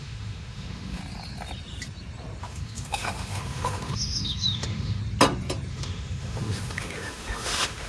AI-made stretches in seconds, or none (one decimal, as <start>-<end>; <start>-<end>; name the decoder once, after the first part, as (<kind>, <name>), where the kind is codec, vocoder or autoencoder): 0.0-1.0 (autoencoder, DAC-VAE); 2.4-5.0; 5.7-7.9